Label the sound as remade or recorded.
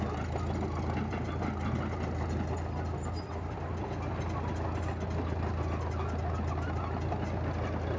recorded